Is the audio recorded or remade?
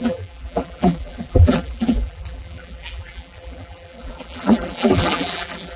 remade